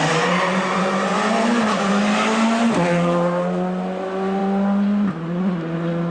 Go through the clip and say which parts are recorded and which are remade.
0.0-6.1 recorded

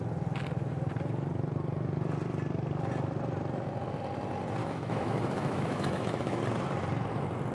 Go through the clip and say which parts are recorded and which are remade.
0.0-4.6 recorded; 4.6-6.4 remade; 6.4-7.5 recorded

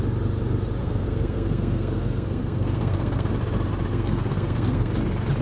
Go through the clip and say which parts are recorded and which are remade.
0.0-0.8 recorded; 0.8-3.3 remade; 3.3-3.9 recorded; 3.9-4.9 remade; 4.9-5.4 recorded